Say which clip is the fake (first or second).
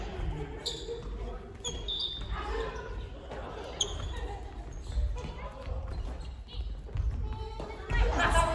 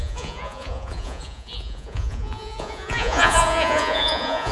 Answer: second